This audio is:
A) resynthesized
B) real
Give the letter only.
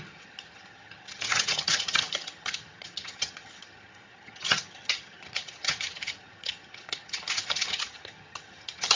A